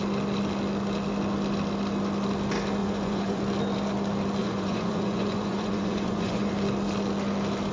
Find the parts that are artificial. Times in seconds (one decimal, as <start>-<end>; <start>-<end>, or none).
2.8-3.4; 4.4-6.5